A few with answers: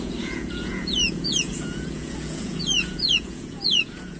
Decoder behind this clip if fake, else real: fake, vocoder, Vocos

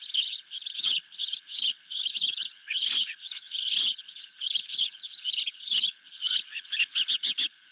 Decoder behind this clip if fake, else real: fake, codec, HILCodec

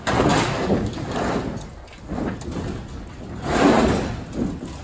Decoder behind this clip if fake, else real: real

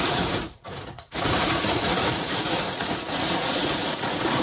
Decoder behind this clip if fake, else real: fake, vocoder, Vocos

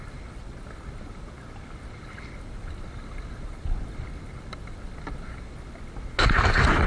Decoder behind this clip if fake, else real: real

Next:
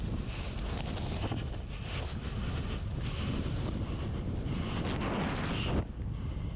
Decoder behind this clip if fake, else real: real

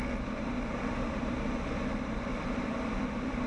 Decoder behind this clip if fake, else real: fake, vocoder, BigVGAN v2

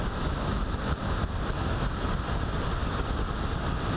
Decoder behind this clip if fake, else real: real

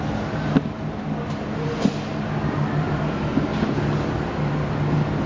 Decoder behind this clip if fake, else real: real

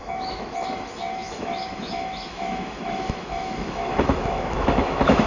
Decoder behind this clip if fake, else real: fake, autoencoder, DAC-VAE